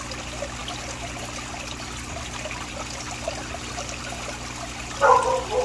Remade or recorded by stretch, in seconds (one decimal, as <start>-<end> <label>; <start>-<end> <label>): 0.0-5.6 recorded